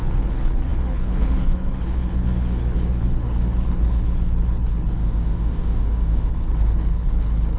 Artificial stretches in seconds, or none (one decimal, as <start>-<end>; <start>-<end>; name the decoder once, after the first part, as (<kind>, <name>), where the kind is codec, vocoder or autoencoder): 0.0-5.0 (codec, HILCodec); 6.3-7.6